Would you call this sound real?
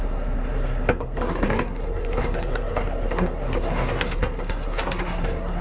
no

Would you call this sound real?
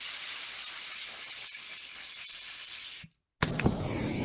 yes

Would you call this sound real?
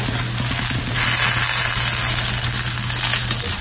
yes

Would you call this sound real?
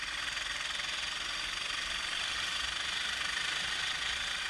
yes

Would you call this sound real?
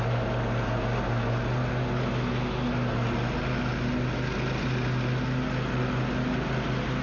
yes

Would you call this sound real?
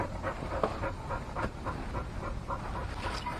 yes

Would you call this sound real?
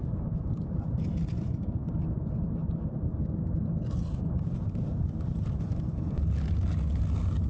yes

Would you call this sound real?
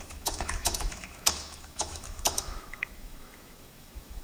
no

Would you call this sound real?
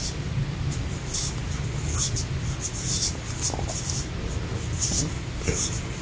yes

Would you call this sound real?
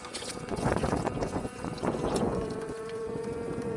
no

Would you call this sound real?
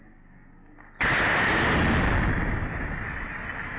yes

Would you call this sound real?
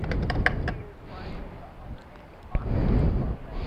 yes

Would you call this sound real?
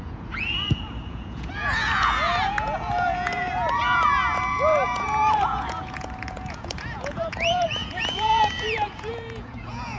no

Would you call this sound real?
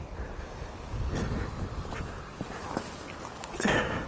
yes